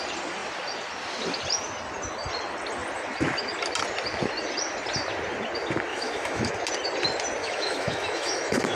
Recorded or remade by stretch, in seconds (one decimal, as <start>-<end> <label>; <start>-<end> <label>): 0.0-5.9 recorded; 5.9-6.5 remade; 6.5-7.4 recorded; 7.4-8.8 remade